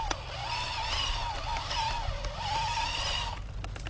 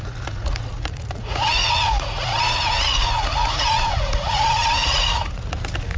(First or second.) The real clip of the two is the first